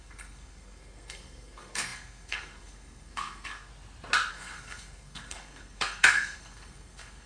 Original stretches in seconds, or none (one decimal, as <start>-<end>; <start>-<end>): 3.7-4.3